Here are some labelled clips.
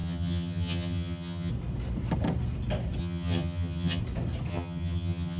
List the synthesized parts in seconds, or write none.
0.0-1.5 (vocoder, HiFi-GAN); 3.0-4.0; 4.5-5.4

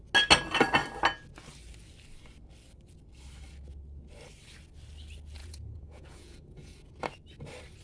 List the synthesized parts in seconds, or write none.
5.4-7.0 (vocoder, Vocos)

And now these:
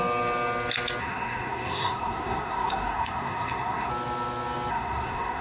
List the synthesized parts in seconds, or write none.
1.0-3.9 (codec, SNAC); 4.7-5.4

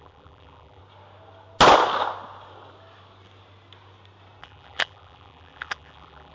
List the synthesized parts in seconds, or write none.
0.0-0.8 (vocoder, BigVGAN v2); 4.4-6.3

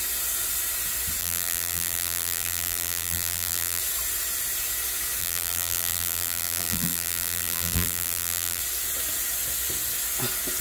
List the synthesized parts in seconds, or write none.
1.2-3.8 (vocoder, BigVGAN v2); 5.2-8.6

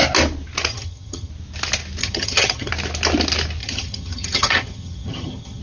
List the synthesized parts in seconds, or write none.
0.7-1.3 (vocoder, HiFi-GAN); 2.0-2.7; 3.6-5.6

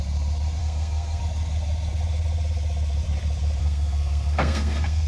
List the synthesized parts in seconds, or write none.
0.6-1.2 (codec, SNAC); 3.6-5.1

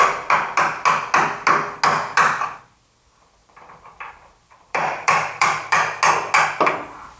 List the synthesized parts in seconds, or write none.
3.4-6.0 (vocoder, BigVGAN v2)